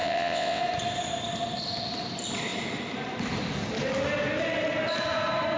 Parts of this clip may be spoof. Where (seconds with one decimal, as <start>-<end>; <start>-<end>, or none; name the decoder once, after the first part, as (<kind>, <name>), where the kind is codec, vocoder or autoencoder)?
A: 0.0-0.6 (vocoder, WaveNeXt)